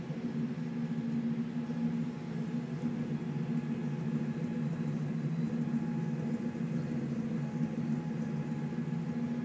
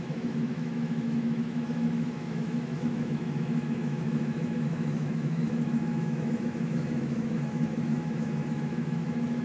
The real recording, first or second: first